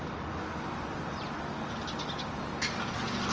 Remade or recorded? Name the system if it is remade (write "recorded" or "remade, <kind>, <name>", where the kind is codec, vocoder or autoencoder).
recorded